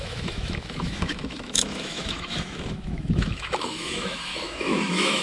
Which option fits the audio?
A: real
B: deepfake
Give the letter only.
B